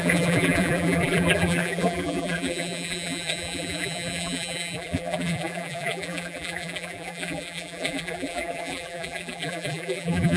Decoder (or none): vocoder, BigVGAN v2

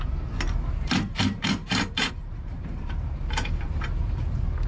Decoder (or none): vocoder, BigVGAN v2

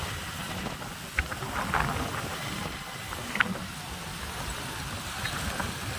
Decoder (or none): none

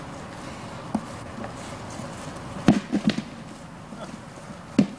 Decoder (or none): none